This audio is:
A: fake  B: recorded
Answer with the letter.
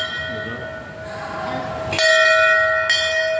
B